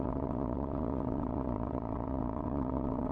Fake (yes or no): yes